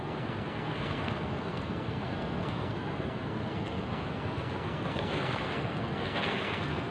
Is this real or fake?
fake